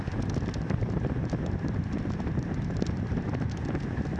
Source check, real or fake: real